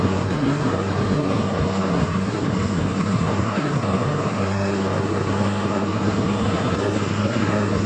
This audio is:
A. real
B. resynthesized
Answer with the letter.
B